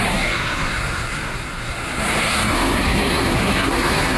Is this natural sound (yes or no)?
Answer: no